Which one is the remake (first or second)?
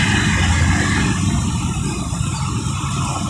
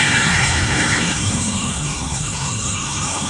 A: second